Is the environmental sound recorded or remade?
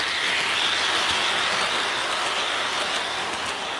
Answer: recorded